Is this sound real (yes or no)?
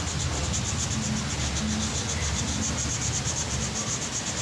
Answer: yes